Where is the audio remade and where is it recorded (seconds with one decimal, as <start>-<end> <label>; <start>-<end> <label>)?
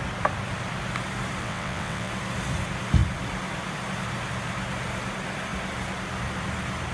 0.0-1.4 recorded; 1.4-2.1 remade; 2.1-6.9 recorded